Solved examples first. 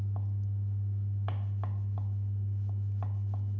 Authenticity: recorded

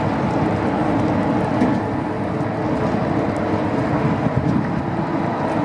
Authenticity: recorded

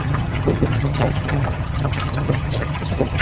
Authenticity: remade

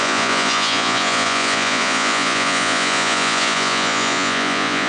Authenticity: remade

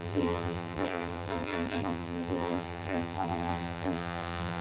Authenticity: remade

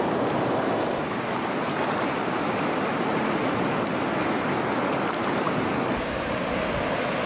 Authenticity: recorded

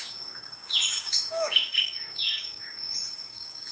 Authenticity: remade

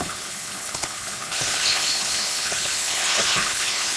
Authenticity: remade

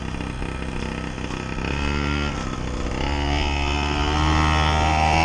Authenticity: recorded